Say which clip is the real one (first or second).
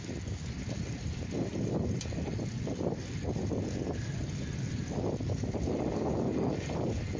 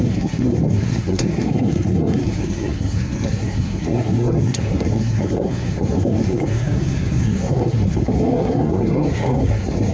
first